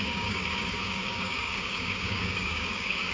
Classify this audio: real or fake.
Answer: fake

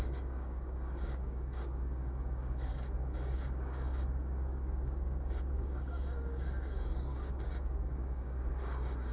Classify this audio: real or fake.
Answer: fake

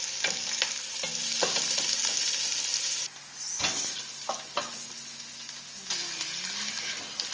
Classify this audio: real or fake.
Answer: real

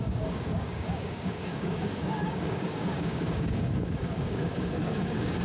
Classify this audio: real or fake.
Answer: fake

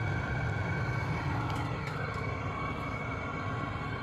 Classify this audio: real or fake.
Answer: real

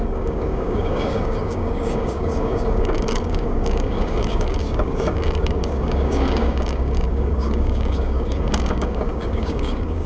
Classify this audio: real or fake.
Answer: fake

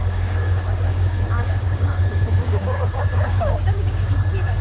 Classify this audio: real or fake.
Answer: fake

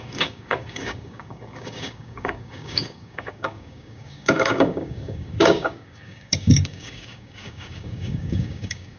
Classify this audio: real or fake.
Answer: fake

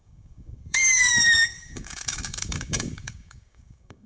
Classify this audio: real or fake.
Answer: fake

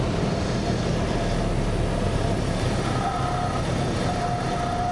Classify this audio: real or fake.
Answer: real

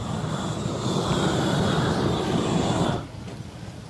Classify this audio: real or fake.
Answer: real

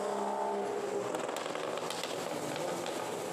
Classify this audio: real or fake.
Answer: real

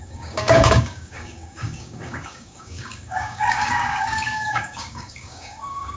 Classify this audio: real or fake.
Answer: fake